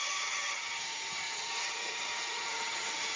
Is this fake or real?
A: fake